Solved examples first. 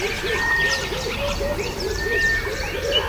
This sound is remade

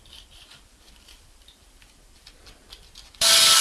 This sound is remade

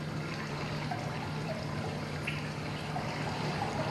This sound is remade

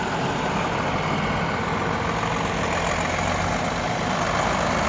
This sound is recorded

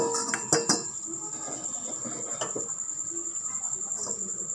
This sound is recorded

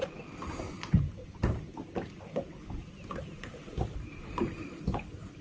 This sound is recorded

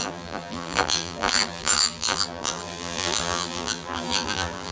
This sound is remade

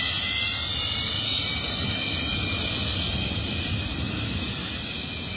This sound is recorded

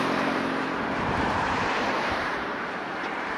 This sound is remade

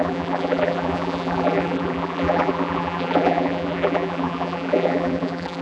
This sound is remade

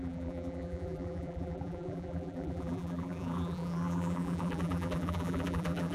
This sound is remade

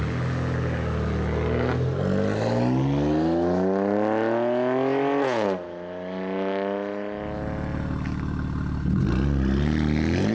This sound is recorded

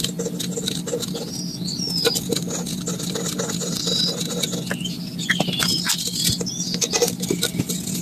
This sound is recorded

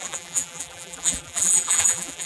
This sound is remade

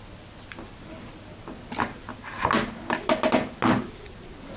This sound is recorded